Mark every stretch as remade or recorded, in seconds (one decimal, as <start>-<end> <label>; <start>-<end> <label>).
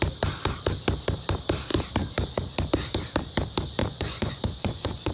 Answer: 0.0-3.8 recorded; 3.8-5.1 remade